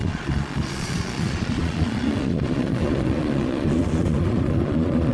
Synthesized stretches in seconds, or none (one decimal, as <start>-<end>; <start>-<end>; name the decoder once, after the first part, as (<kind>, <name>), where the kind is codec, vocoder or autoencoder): 0.0-5.1 (vocoder, Vocos)